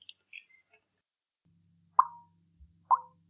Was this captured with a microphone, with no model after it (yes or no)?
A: yes